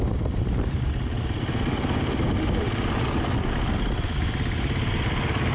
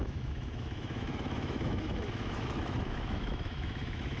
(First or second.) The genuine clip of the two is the first